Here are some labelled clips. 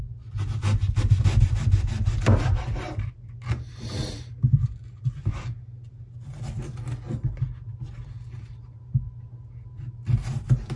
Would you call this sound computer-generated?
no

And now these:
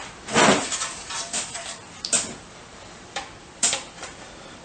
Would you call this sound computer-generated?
yes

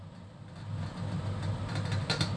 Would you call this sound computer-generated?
no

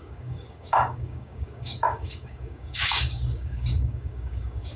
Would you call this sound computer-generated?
yes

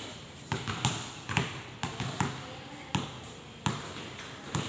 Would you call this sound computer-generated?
no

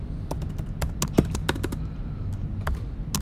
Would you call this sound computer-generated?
no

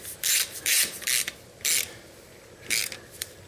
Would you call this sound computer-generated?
no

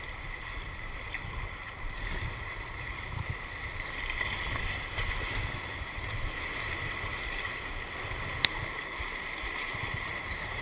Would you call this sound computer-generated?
no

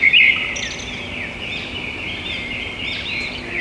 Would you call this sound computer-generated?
yes